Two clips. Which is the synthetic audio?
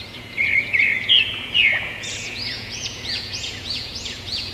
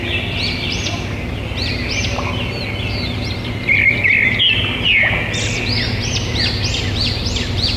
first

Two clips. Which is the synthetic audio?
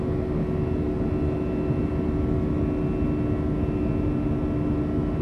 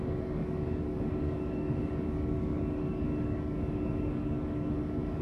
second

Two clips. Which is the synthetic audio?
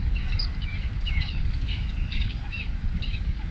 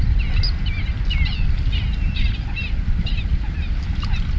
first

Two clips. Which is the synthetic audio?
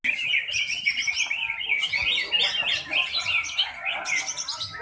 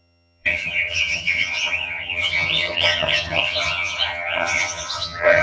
second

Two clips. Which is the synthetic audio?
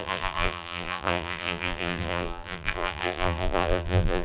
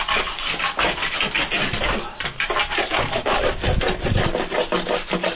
first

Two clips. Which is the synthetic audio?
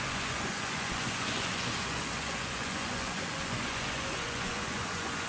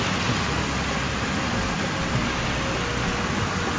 first